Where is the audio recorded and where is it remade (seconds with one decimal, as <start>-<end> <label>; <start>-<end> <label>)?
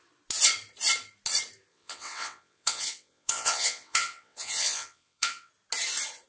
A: 0.0-1.7 recorded; 1.7-5.5 remade; 5.5-6.3 recorded